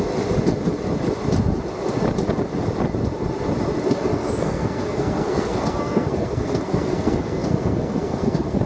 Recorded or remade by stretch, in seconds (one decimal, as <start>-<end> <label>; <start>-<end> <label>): 0.0-4.1 recorded; 4.1-8.7 remade